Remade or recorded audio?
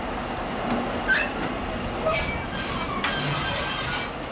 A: recorded